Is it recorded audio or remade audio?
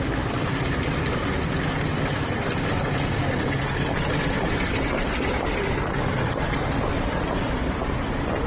recorded